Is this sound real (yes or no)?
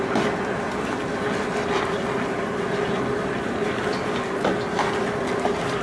yes